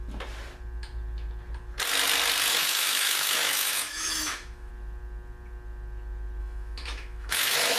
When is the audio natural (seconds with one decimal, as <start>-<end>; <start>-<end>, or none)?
0.0-2.5; 4.7-6.4